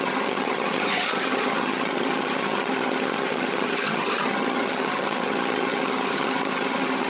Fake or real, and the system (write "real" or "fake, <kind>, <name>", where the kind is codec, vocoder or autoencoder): fake, vocoder, HiFi-GAN